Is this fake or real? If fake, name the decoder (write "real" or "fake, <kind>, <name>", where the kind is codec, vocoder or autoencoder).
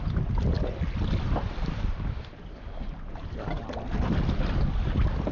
real